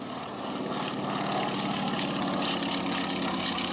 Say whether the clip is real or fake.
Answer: real